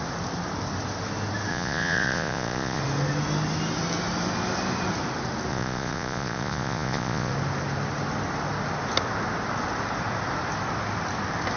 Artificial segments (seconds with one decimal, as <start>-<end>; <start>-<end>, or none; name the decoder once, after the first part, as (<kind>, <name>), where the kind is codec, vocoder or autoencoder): 1.5-2.8 (vocoder, Vocos); 5.5-7.3